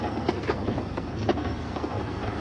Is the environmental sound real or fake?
fake